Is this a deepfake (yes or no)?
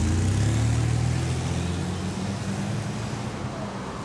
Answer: no